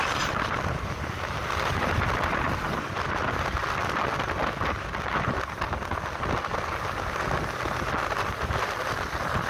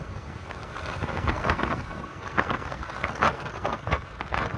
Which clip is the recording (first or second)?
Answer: first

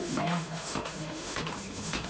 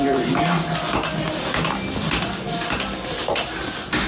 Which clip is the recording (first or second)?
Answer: second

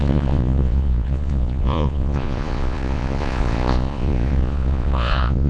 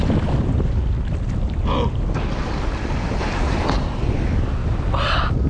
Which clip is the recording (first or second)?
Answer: second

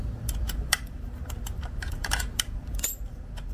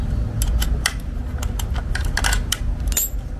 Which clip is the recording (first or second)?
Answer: second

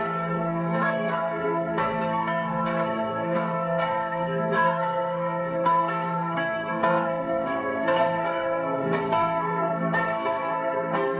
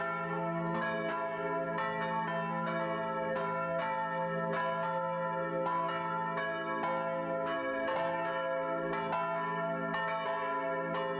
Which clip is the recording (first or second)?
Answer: second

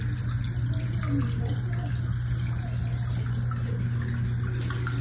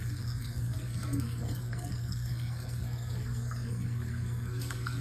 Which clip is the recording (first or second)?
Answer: first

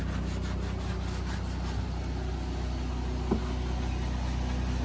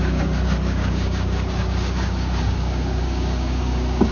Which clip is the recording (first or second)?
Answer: first